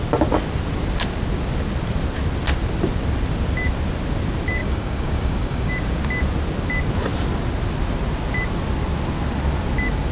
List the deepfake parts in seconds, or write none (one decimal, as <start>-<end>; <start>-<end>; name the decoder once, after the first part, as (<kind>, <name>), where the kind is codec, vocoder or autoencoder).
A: 4.6-5.7 (codec, DAC)